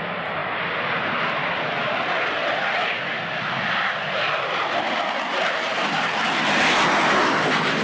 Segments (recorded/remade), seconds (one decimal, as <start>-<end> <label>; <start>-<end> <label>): 0.0-7.8 recorded